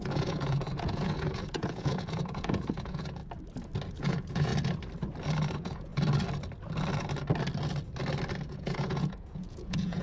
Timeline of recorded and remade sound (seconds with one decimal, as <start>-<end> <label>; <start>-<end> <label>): 0.0-3.2 remade; 3.2-3.9 recorded; 3.9-4.5 remade; 4.5-5.5 recorded; 5.5-5.9 remade; 5.9-8.5 recorded; 8.5-10.0 remade